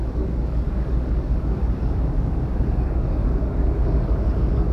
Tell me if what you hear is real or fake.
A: fake